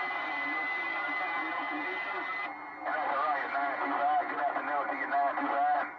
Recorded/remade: recorded